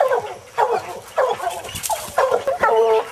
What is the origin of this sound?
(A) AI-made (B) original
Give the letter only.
B